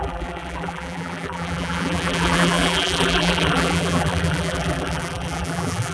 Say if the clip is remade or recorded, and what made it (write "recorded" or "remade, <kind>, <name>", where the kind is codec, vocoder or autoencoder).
remade, vocoder, BigVGAN v2